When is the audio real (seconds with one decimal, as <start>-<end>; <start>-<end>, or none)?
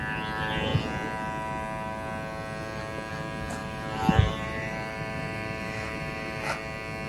0.0-3.6; 6.4-7.1